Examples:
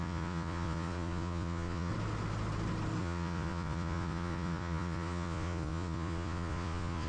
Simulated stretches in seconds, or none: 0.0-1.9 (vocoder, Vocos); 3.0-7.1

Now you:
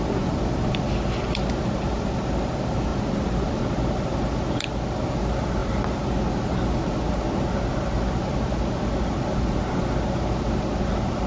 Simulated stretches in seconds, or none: none

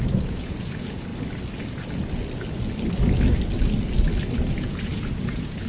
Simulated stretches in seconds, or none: 0.0-1.1 (vocoder, Vocos); 4.5-5.7

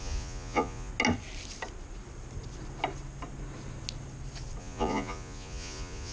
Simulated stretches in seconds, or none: 0.0-0.9 (vocoder, Vocos); 4.6-6.1

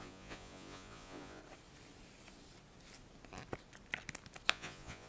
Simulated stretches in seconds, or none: 0.0-1.4 (vocoder, Vocos); 4.5-5.1

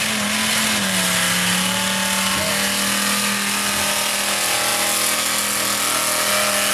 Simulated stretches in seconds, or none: none